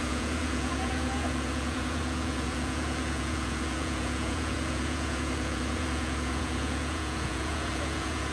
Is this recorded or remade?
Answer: remade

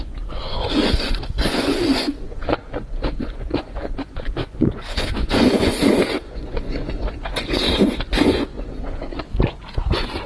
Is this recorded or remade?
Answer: remade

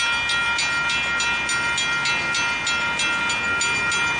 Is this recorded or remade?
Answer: recorded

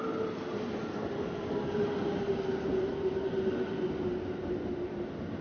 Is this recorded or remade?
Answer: recorded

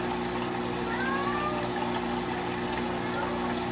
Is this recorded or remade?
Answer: recorded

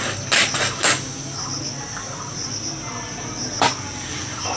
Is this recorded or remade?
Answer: recorded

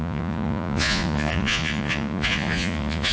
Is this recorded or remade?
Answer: remade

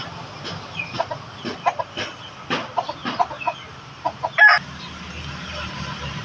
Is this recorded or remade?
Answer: recorded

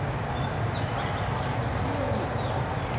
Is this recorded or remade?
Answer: recorded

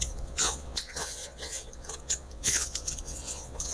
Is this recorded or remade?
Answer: remade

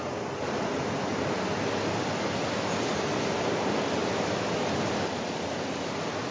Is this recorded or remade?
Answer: recorded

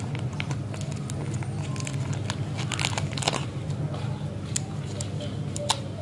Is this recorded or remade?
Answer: recorded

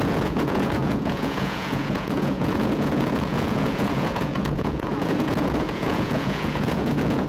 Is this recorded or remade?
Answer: remade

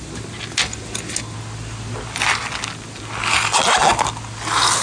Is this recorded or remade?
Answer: recorded